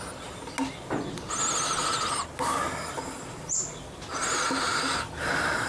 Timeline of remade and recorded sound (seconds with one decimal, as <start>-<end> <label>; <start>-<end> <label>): 0.0-5.7 recorded